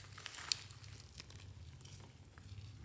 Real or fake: real